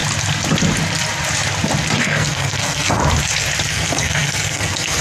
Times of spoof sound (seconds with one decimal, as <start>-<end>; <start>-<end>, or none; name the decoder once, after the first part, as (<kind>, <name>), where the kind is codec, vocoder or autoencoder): 2.0-3.0 (codec, SNAC); 3.7-5.0